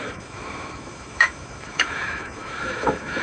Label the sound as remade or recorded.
remade